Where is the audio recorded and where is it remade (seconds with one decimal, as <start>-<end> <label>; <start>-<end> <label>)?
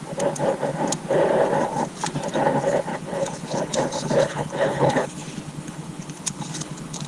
0.0-2.9 recorded; 2.9-7.1 remade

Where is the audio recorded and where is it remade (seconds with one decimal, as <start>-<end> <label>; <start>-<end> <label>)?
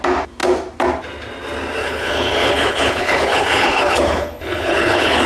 0.0-1.8 recorded; 1.8-5.3 remade